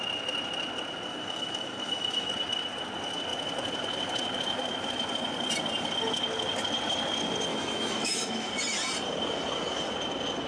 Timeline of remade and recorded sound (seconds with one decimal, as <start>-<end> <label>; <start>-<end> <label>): 0.0-1.1 recorded; 1.1-2.3 remade; 2.3-7.5 recorded; 7.5-8.5 remade; 8.5-10.5 recorded